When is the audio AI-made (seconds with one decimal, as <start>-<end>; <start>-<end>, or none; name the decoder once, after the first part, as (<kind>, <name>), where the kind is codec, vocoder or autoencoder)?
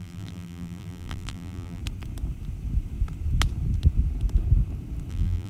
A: 0.0-1.8 (vocoder, BigVGAN v2); 5.1-5.5